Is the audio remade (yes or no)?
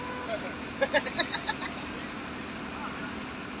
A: no